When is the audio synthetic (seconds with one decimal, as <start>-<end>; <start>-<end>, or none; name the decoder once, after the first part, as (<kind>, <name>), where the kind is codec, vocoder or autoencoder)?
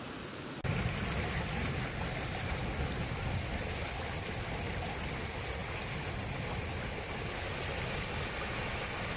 none